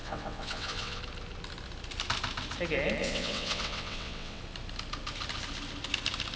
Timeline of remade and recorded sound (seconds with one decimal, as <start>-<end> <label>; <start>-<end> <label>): 0.0-1.0 remade; 1.0-3.0 recorded; 3.0-4.4 remade; 4.4-6.4 recorded